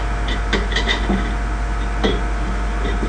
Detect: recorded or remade recorded